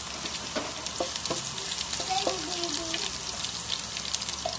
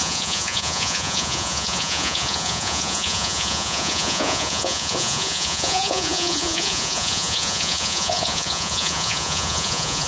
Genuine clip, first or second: first